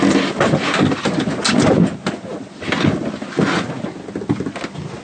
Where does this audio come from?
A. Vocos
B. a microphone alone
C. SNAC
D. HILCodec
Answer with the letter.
B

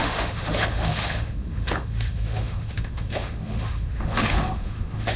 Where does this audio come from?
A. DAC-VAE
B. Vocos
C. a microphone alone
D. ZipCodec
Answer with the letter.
A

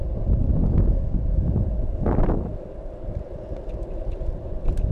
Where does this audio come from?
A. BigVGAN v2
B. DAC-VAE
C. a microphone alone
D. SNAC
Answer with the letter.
C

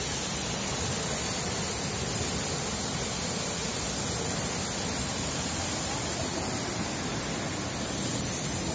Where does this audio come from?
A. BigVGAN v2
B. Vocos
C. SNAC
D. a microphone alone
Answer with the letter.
D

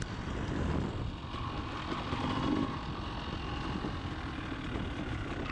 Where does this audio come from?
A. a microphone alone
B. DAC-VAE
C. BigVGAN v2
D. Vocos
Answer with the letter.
A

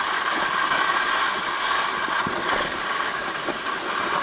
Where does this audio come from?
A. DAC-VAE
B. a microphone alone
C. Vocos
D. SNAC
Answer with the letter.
B